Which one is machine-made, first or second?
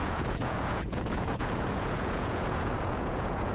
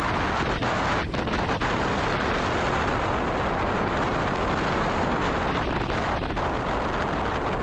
first